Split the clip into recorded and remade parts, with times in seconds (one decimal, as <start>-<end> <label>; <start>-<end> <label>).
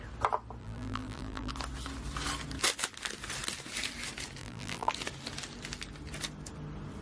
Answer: 0.0-0.6 recorded; 0.6-1.5 remade; 1.5-4.4 recorded; 4.4-4.9 remade; 4.9-7.0 recorded